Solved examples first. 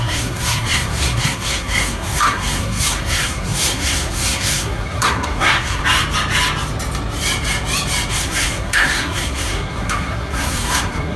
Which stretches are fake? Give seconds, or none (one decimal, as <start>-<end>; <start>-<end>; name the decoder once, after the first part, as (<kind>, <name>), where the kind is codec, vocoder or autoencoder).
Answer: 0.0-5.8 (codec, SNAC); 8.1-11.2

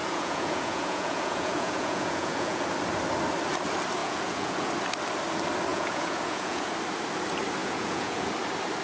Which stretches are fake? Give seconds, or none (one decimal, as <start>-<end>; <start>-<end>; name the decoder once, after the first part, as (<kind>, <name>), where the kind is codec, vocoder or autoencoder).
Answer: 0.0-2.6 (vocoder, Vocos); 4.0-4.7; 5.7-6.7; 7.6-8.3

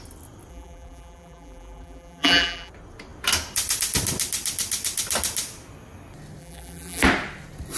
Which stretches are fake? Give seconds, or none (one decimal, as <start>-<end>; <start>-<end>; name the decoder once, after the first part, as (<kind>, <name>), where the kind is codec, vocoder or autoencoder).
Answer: 0.5-2.7 (vocoder, BigVGAN v2); 6.4-7.0